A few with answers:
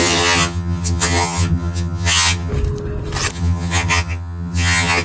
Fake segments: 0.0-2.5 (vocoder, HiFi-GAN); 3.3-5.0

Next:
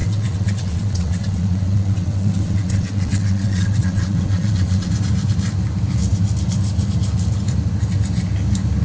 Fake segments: 0.0-4.9 (vocoder, WaveNeXt)

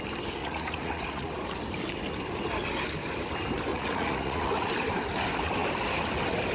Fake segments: 0.4-1.3 (vocoder, Vocos); 3.7-4.7

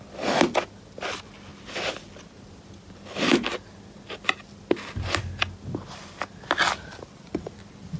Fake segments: none

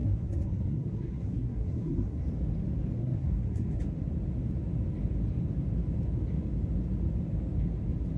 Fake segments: 0.0-2.2 (codec, SNAC); 3.0-3.8

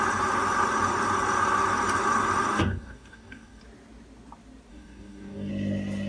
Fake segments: 2.5-3.6 (codec, DAC); 4.7-5.5

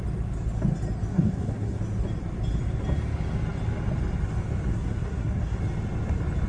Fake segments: 1.1-1.8 (codec, SNAC); 4.7-5.6

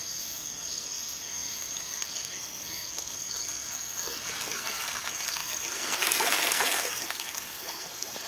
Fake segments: 0.0-8.3 (codec, SNAC)